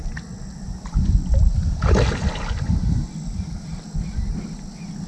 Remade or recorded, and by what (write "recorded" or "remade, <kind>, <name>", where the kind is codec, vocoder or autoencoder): recorded